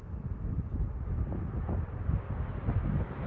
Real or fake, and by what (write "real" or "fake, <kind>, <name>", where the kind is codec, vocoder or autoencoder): real